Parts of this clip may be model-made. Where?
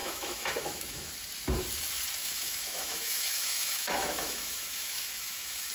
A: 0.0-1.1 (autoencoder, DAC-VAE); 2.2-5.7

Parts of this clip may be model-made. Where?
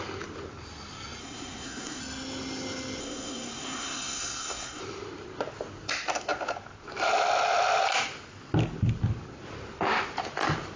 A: 1.2-2.0 (codec, SNAC); 3.0-4.8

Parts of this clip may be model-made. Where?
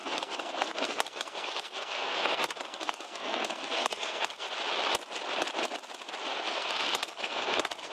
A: 0.0-4.5 (codec, SNAC); 6.3-7.9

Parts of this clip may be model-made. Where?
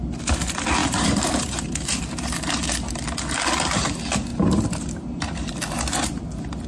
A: 0.8-2.6 (vocoder, BigVGAN v2); 4.3-5.5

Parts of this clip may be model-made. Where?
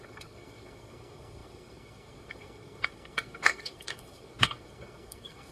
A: 0.0-5.5 (codec, SNAC)